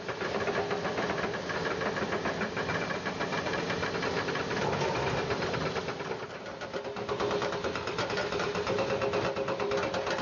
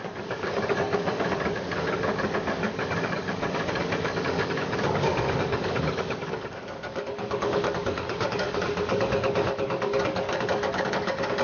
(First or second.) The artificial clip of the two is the second